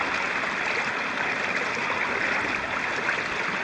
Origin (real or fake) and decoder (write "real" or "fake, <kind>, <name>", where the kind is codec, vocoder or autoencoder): real